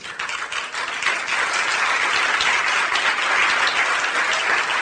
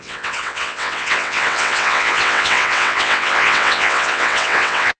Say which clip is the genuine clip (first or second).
first